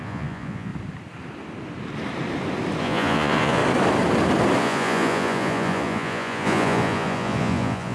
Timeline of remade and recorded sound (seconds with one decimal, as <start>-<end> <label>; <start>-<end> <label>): 0.0-0.7 remade; 0.7-2.8 recorded; 2.8-3.6 remade; 3.6-4.6 recorded; 4.6-7.9 remade